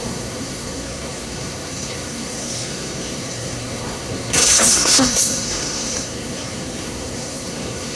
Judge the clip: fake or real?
fake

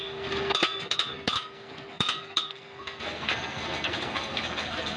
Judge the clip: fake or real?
fake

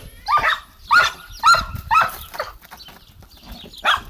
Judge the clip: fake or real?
real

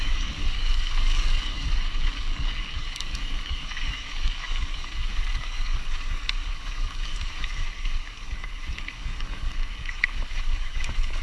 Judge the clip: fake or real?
fake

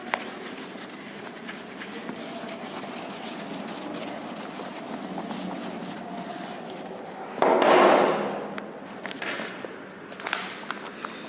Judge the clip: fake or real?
real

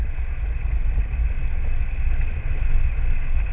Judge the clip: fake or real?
real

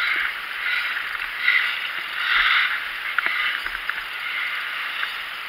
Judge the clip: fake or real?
real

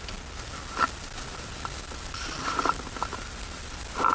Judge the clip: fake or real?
real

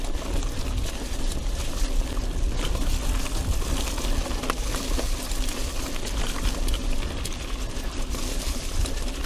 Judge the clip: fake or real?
real